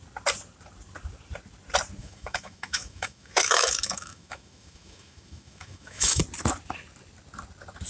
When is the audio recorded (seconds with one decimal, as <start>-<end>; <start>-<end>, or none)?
0.0-2.0; 6.2-7.9